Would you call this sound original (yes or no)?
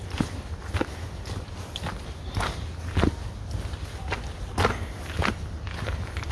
yes